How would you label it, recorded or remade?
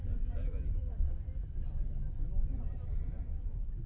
recorded